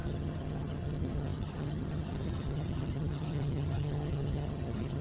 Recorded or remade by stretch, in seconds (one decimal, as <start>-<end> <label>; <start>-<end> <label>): 0.0-5.0 remade